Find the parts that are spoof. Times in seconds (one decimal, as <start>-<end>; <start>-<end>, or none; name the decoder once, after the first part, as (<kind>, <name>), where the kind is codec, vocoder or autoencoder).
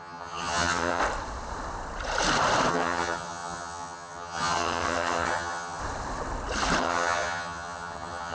0.0-1.0 (vocoder, HiFi-GAN); 2.7-5.8; 6.8-8.3